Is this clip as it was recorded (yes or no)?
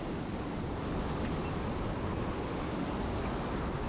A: yes